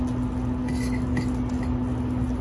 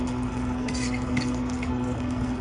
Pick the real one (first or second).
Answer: first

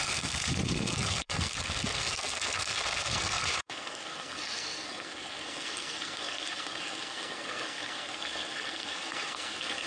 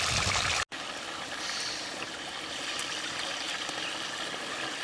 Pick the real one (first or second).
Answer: second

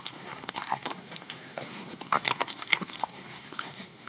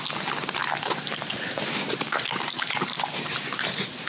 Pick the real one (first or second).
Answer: second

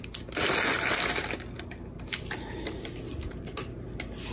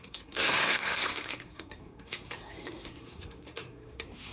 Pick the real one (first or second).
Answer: first